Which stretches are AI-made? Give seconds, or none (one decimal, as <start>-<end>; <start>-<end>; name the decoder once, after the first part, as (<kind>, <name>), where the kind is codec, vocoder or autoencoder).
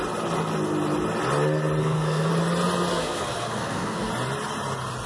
1.8-2.3 (codec, SNAC); 2.9-4.1